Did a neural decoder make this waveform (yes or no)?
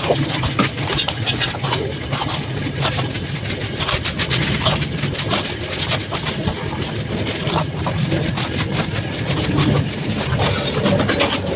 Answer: no